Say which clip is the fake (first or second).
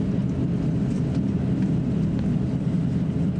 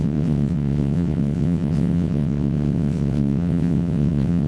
second